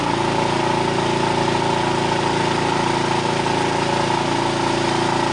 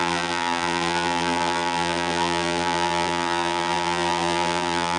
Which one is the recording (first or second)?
first